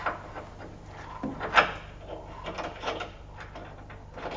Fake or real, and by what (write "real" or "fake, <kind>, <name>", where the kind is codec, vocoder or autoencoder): real